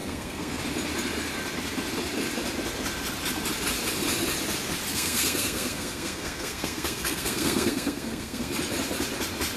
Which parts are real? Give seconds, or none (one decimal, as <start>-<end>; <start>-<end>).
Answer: 0.6-4.9; 8.5-9.6